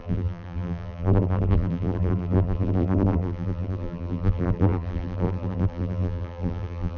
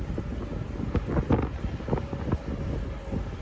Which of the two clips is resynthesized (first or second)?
first